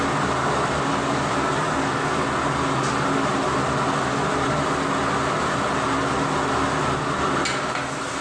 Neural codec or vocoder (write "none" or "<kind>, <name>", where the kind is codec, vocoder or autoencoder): none